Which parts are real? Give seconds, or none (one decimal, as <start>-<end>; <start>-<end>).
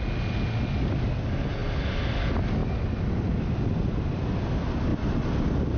0.0-1.6; 2.2-2.6; 4.2-4.9